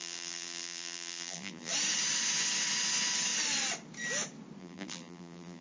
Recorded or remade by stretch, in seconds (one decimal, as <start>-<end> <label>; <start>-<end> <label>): 0.0-1.7 remade; 1.7-4.6 recorded; 4.6-5.6 remade